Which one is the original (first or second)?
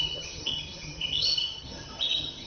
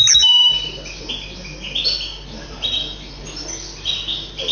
second